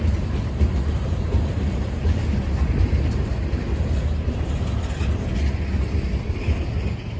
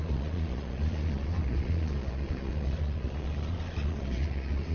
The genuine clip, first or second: first